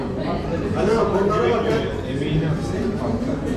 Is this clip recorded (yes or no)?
no